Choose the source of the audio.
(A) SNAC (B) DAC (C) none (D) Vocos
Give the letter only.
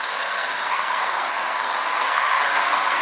A